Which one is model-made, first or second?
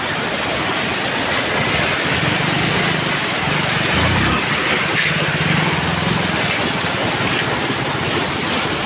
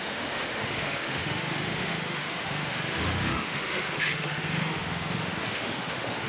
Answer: second